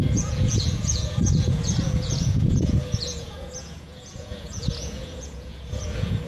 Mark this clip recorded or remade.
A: remade